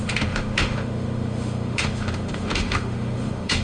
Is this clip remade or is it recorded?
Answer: remade